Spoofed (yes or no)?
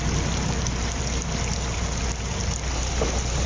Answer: no